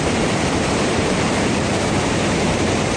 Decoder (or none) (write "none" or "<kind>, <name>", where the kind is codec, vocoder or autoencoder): vocoder, BigVGAN v2